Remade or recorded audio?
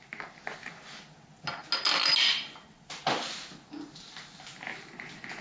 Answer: recorded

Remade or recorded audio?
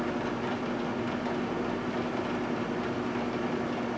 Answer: recorded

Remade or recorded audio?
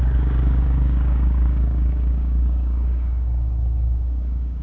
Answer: remade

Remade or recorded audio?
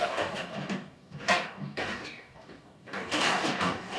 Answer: remade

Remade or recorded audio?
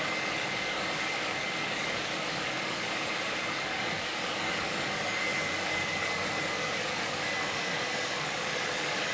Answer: remade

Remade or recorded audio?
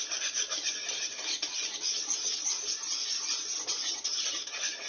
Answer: recorded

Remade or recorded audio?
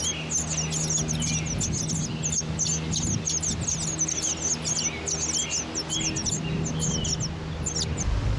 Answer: recorded